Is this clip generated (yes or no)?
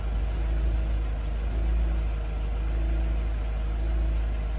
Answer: no